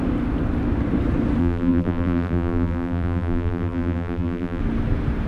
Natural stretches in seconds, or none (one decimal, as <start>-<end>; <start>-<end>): 0.0-1.4; 4.6-5.3